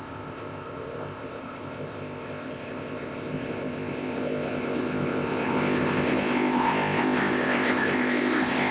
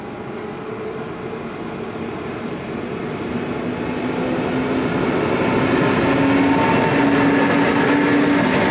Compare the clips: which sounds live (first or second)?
second